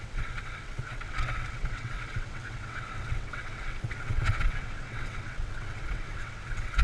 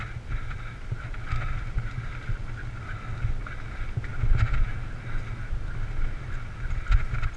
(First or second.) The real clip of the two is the second